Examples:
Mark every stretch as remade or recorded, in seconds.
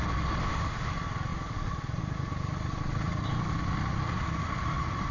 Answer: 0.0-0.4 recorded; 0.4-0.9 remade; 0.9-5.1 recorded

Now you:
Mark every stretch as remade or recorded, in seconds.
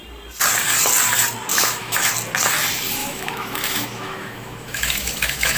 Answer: 0.0-1.5 recorded; 1.5-2.1 remade; 2.1-3.0 recorded; 3.0-5.6 remade